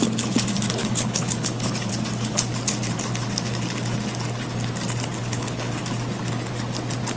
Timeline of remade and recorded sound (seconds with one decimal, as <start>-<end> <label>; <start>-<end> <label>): 0.0-0.8 recorded; 0.8-1.9 remade; 1.9-5.2 recorded; 5.2-5.8 remade; 5.8-7.2 recorded